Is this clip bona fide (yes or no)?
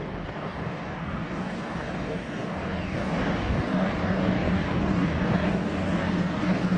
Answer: no